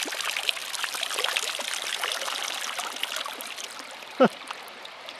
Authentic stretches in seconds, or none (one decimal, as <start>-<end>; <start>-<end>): 0.0-5.2